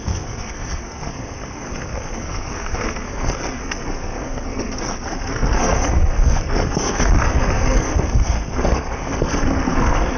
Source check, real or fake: fake